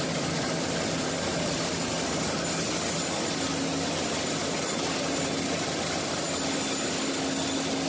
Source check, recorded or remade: recorded